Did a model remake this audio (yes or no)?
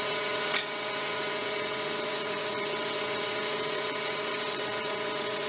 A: yes